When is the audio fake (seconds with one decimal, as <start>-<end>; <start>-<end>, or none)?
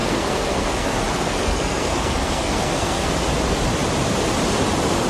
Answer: 0.0-3.1